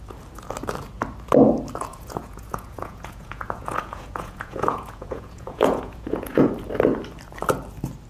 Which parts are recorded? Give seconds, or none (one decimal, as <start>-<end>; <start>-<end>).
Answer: 0.0-1.9; 6.5-8.1

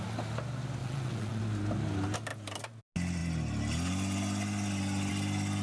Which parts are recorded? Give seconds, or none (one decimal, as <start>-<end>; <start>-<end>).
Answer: 0.0-0.8; 1.4-5.6

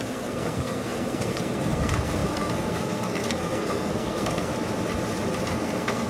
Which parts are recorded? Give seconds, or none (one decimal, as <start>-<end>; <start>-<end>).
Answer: 4.5-5.5

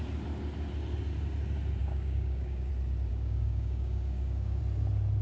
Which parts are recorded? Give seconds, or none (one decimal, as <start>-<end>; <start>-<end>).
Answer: 0.0-1.8; 2.7-3.1; 4.6-5.2

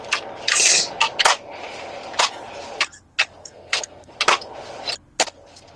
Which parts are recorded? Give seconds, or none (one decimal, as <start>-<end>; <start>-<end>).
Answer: 0.0-3.4; 4.1-5.8

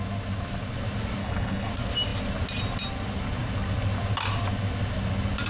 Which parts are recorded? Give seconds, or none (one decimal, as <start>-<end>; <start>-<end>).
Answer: 0.0-1.2; 1.7-5.5

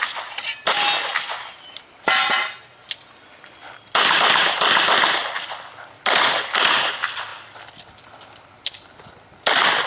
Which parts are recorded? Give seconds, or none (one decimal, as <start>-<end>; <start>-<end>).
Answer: 0.0-9.9

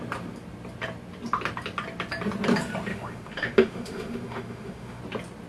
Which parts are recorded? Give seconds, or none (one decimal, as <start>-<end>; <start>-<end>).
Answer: 0.0-2.9; 5.0-5.5